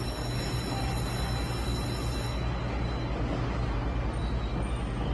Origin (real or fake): real